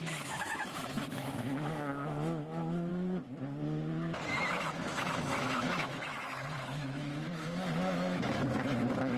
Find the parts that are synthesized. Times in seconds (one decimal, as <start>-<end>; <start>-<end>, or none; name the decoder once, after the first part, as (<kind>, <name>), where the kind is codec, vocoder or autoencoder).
0.0-2.9 (autoencoder, DAC-VAE); 4.4-9.2